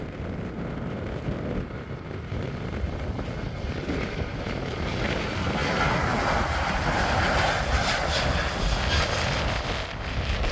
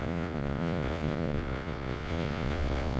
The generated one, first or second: second